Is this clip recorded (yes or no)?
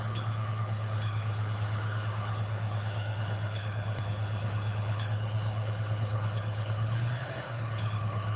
no